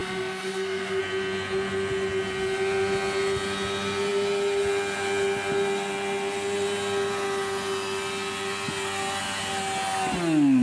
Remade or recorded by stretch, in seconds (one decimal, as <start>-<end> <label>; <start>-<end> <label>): 0.0-1.0 remade; 1.0-10.6 recorded